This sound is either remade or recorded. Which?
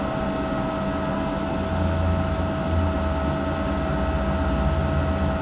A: recorded